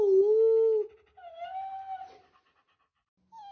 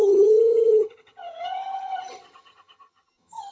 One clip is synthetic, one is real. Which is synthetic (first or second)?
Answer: second